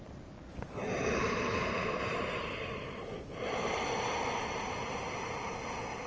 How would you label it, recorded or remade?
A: recorded